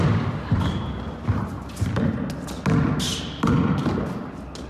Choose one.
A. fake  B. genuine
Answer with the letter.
B